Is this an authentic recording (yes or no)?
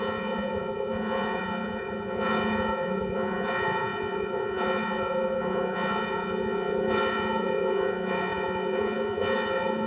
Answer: no